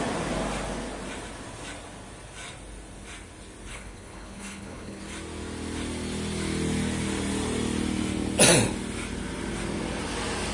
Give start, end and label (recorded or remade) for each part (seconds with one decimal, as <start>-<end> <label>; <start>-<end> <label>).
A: 0.0-3.7 recorded; 3.7-5.0 remade; 5.0-10.5 recorded